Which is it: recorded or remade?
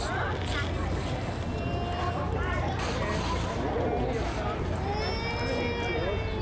recorded